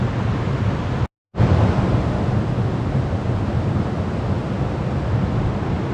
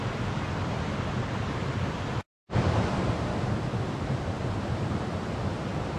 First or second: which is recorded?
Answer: first